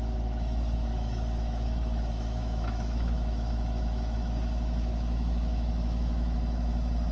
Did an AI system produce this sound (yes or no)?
yes